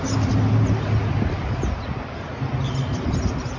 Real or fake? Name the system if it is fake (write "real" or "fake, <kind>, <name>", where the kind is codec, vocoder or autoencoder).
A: real